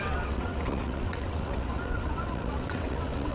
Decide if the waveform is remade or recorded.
remade